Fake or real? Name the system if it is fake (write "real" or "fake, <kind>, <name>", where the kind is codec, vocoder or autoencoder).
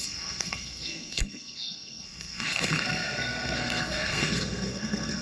fake, codec, SNAC